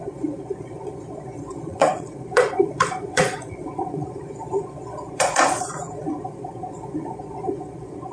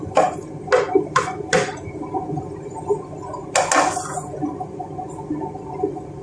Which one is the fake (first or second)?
first